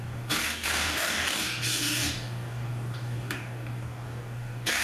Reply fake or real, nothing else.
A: fake